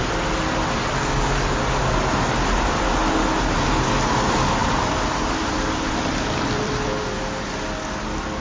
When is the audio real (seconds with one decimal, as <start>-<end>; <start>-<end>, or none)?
0.0-4.6; 6.9-8.4